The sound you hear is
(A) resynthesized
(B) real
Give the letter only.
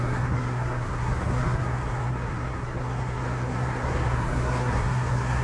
A